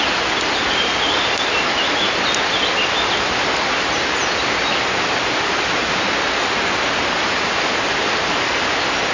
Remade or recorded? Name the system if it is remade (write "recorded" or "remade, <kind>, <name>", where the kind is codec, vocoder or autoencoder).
recorded